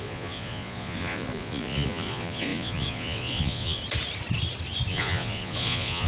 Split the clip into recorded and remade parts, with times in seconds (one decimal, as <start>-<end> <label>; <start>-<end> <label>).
0.0-3.8 remade; 3.8-4.9 recorded; 4.9-6.1 remade